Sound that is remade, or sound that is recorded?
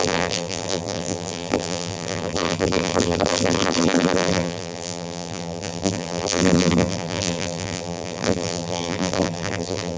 remade